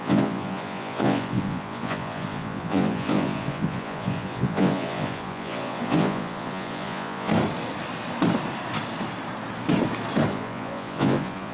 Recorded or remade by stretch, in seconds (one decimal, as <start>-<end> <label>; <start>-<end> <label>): 0.0-7.3 remade; 7.3-10.3 recorded; 10.3-11.5 remade